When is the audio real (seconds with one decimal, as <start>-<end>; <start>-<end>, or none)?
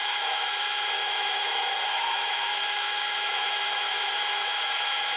0.6-1.0; 1.5-1.9